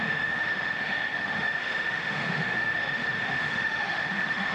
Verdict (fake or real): fake